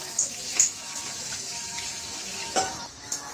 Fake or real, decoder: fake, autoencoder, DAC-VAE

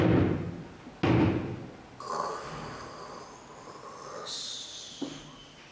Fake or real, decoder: real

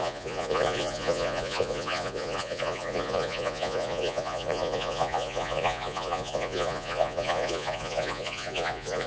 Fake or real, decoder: fake, vocoder, Vocos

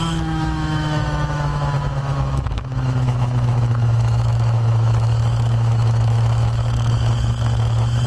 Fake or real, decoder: fake, autoencoder, DAC-VAE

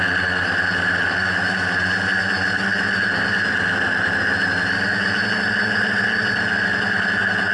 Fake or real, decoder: real